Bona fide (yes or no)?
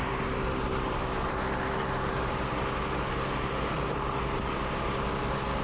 yes